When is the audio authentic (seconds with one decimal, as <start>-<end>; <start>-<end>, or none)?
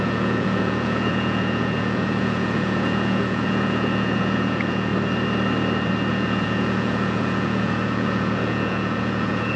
4.9-6.1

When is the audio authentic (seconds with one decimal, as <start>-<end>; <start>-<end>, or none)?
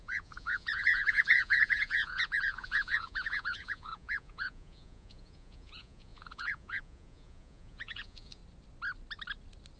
8.4-9.8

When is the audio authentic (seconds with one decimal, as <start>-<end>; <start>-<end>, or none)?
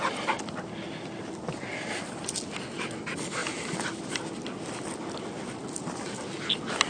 0.0-6.9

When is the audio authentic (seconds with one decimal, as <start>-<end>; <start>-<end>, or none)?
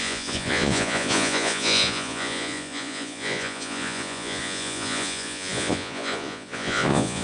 none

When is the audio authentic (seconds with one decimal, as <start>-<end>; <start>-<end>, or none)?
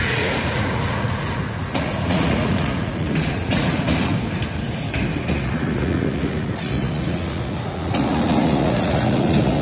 4.1-5.2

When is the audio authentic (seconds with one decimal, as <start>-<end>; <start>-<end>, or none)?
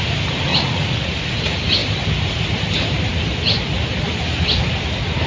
0.0-0.5; 1.1-5.3